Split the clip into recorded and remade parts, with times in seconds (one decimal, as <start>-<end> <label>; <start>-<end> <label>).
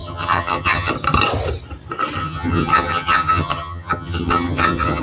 0.0-0.9 remade; 0.9-2.2 recorded; 2.2-5.0 remade